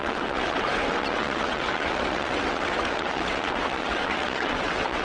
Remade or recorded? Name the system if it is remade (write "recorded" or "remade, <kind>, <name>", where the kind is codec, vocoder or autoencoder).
remade, vocoder, WaveNeXt